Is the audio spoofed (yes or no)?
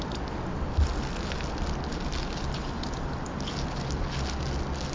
no